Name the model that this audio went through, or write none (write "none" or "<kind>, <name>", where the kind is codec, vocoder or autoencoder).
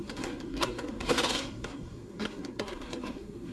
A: codec, SNAC